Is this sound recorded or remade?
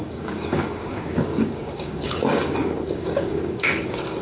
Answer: remade